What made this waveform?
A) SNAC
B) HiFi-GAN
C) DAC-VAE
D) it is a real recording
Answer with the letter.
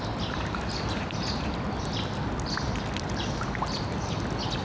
D